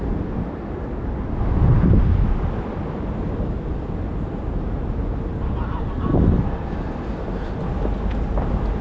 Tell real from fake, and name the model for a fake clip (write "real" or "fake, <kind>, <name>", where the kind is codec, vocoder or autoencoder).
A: real